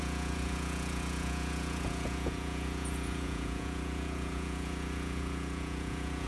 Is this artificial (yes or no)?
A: yes